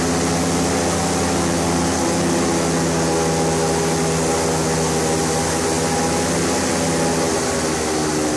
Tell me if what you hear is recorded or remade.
recorded